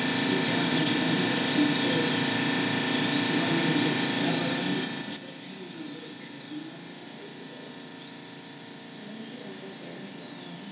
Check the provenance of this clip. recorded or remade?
recorded